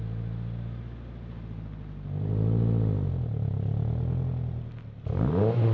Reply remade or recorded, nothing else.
recorded